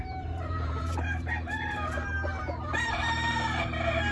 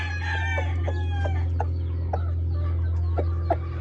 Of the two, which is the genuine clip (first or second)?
second